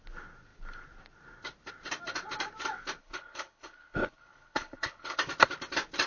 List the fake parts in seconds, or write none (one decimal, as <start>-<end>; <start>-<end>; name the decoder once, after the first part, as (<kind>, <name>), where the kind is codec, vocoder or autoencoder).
3.0-5.2 (codec, HILCodec)